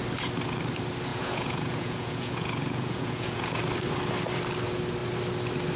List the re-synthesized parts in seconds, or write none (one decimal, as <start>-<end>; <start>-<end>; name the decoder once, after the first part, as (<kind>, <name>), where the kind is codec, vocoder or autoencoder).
1.1-3.6 (vocoder, Vocos)

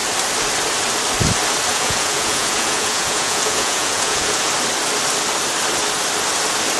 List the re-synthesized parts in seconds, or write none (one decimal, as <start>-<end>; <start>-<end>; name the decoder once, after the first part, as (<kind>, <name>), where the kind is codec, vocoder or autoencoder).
1.7-4.5 (vocoder, Vocos)